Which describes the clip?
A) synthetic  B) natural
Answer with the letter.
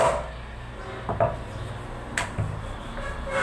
B